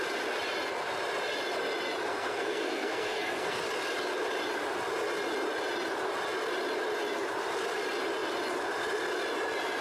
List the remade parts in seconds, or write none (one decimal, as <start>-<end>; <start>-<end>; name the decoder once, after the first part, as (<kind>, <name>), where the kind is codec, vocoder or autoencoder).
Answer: 2.1-3.6 (codec, SNAC)